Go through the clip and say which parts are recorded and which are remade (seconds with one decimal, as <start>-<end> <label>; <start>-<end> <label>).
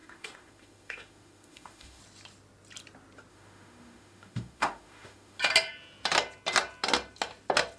0.0-2.0 remade; 2.0-3.3 recorded; 3.3-5.4 remade; 5.4-7.8 recorded